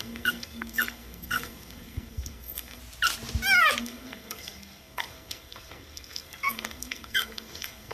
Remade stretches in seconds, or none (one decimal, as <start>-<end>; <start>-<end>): 0.0-2.8; 3.8-7.9